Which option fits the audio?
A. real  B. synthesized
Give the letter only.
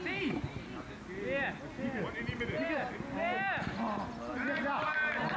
A